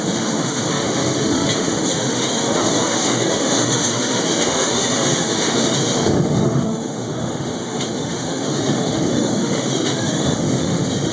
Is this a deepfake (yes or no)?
yes